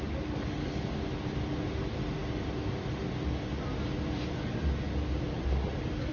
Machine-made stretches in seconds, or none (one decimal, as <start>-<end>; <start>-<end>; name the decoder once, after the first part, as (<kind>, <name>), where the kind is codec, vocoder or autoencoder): none